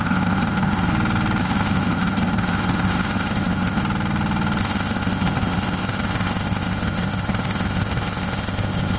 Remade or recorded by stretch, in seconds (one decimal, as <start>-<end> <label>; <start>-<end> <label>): 0.0-0.9 remade; 0.9-1.4 recorded; 1.4-3.8 remade; 3.8-4.6 recorded; 4.6-9.0 remade